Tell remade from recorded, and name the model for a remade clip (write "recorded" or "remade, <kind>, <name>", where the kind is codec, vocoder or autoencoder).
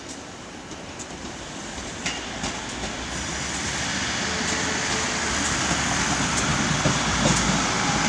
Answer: recorded